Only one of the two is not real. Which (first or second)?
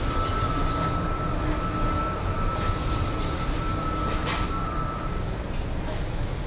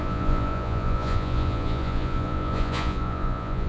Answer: second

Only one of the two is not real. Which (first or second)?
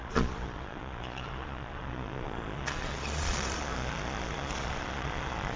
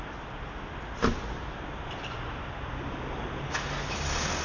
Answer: first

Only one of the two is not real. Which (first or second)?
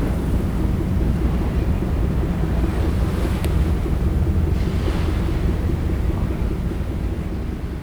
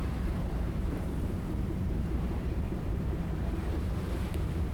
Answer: second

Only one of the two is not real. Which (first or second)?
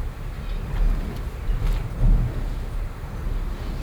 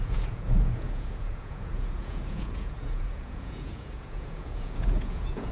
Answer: second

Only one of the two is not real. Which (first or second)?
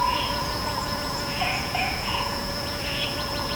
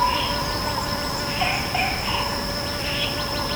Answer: first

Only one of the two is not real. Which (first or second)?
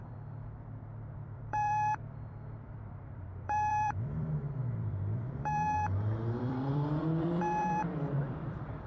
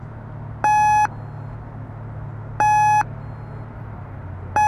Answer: first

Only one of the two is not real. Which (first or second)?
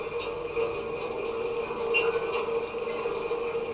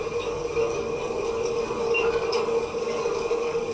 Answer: second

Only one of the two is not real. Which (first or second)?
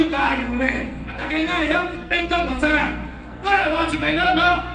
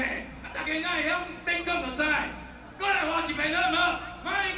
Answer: first